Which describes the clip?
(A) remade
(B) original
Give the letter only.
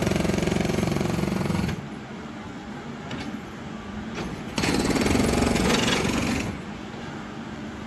A